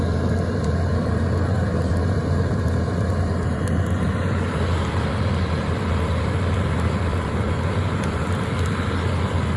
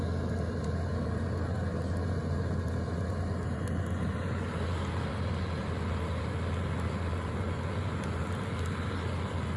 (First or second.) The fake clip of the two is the first